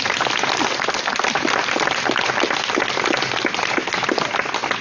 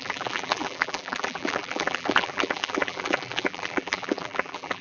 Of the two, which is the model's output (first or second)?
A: second